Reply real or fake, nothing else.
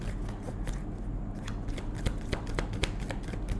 real